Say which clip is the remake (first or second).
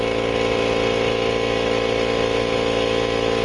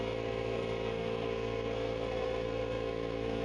second